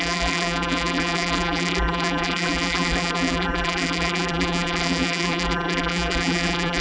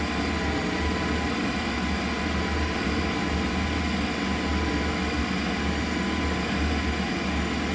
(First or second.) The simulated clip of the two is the first